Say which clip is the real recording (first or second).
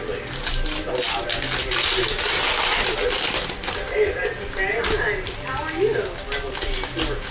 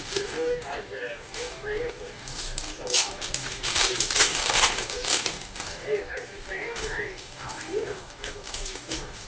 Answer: first